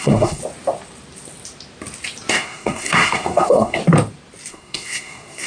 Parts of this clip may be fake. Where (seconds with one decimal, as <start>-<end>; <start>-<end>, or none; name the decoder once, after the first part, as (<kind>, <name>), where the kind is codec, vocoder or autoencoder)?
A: 0.0-0.4 (codec, SNAC); 2.3-3.8; 4.5-5.5